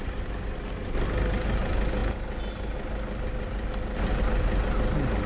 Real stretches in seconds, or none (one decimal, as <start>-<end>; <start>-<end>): 0.0-5.3